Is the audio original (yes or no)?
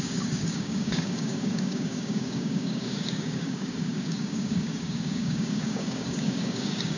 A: no